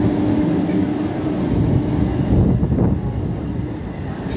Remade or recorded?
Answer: recorded